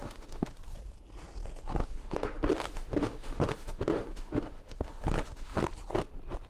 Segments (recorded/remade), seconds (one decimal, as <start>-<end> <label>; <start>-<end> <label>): 0.0-0.6 remade; 0.6-1.8 recorded; 1.8-5.7 remade; 5.7-6.5 recorded